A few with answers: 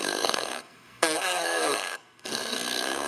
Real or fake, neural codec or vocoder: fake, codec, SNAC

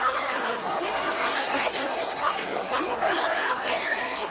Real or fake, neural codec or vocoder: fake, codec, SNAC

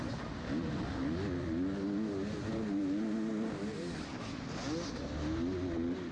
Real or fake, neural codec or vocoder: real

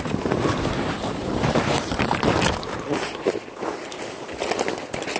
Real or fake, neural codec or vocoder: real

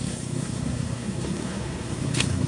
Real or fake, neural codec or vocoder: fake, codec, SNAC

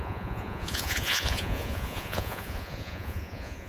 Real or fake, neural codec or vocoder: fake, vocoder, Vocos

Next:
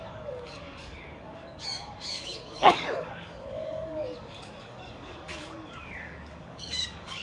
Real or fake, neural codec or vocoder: fake, codec, DAC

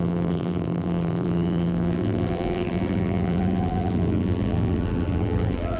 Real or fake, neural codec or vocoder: fake, vocoder, BigVGAN v2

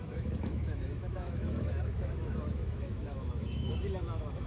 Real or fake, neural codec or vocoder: fake, autoencoder, DAC-VAE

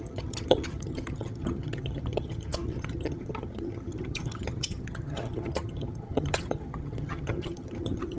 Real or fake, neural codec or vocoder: fake, vocoder, HiFi-GAN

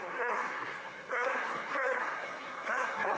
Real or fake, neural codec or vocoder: fake, codec, SNAC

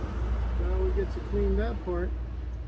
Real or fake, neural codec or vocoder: real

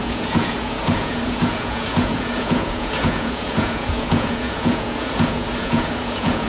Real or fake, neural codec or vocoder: fake, vocoder, Vocos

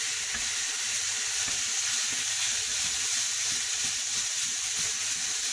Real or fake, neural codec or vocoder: real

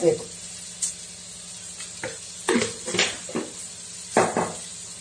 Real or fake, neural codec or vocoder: real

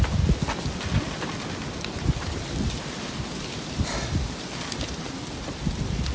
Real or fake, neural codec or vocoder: real